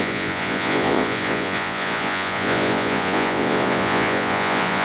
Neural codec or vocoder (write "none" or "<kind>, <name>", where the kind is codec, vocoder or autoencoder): vocoder, Vocos